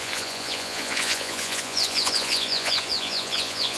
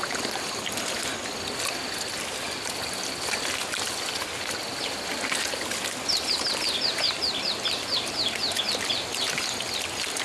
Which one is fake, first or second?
first